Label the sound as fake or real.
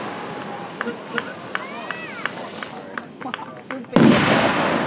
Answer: real